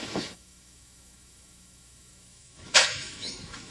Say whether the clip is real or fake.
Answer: fake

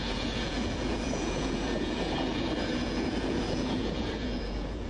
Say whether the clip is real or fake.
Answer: fake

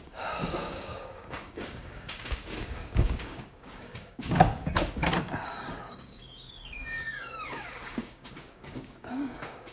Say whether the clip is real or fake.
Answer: fake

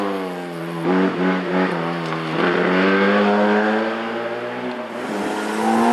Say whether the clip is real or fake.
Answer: real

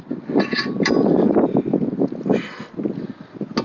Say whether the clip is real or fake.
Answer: real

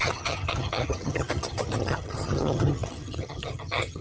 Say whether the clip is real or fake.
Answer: fake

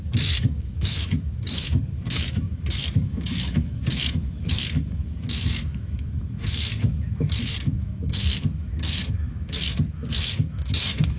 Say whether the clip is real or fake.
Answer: fake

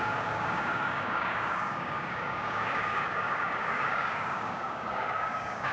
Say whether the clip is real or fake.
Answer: fake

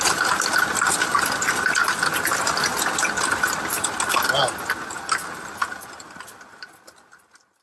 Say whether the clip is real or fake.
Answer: real